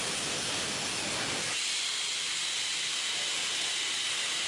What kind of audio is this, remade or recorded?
recorded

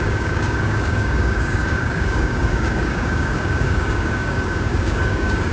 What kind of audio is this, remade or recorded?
remade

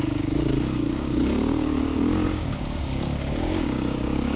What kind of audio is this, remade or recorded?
remade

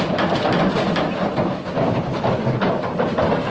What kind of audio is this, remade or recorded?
recorded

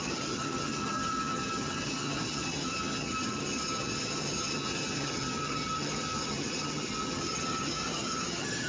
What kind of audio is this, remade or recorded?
remade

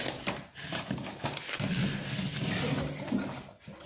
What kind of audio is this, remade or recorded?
recorded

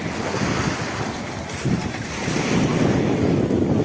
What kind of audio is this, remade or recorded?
recorded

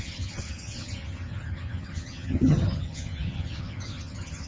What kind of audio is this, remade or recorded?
remade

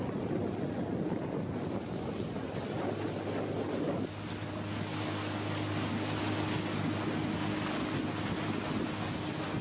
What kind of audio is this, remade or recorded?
recorded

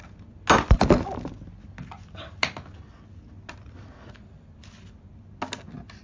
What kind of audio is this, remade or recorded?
recorded